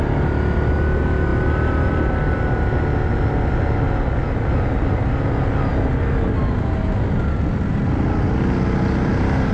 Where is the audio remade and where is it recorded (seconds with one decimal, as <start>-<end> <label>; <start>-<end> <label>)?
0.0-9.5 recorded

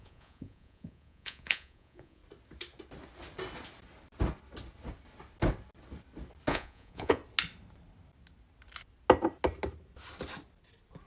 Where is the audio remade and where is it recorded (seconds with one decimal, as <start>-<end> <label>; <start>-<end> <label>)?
0.0-2.2 remade; 2.2-6.5 recorded; 6.5-7.2 remade; 7.2-11.1 recorded

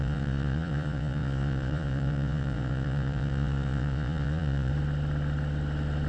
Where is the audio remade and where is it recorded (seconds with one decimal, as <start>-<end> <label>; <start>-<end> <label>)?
0.0-4.7 remade; 4.7-6.1 recorded

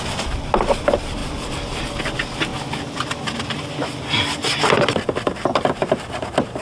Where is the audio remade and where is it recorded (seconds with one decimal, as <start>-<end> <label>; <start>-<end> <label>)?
0.0-6.6 recorded

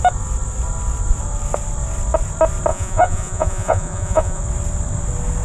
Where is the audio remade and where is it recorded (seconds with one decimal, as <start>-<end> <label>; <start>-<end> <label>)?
0.0-2.7 recorded; 2.7-4.4 remade; 4.4-5.4 recorded